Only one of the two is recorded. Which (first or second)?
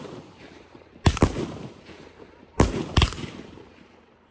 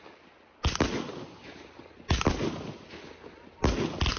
second